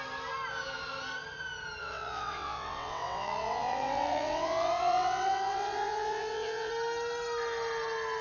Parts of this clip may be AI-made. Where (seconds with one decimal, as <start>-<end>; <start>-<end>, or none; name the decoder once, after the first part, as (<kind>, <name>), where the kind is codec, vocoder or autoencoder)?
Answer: 1.8-6.7 (vocoder, WaveNeXt)